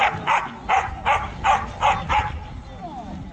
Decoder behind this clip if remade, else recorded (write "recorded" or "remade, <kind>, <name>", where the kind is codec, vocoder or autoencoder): recorded